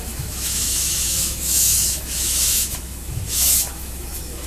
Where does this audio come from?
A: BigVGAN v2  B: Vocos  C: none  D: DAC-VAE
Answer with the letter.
D